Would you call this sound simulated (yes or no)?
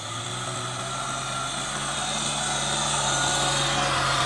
no